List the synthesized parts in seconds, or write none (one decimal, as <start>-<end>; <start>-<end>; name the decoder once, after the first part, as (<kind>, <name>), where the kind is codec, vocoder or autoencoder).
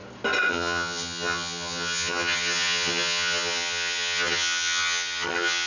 0.5-5.7 (vocoder, HiFi-GAN)